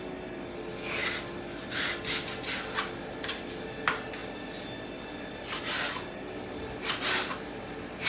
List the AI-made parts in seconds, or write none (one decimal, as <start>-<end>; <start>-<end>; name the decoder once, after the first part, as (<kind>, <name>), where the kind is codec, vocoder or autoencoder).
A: none